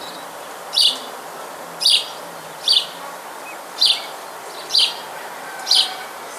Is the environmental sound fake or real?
fake